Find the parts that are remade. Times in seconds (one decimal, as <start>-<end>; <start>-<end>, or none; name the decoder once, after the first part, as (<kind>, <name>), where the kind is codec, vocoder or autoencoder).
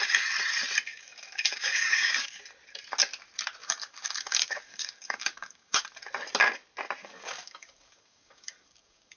0.9-2.4 (codec, DAC); 3.6-5.8; 7.0-9.2